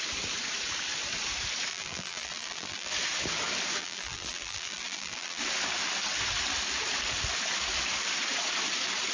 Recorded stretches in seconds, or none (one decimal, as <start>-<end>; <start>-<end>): 0.0-1.7; 2.9-3.8; 5.4-9.1